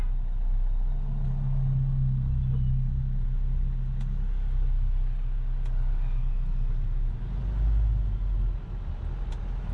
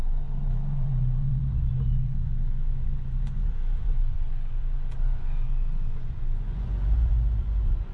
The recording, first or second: first